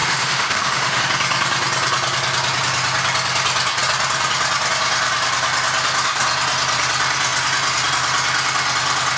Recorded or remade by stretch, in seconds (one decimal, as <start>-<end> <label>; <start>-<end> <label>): 0.0-1.0 remade; 1.0-9.2 recorded